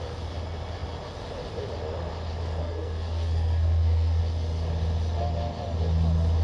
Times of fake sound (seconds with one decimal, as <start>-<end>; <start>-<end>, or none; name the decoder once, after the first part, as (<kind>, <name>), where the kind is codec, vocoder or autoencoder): 2.6-4.2 (codec, SNAC)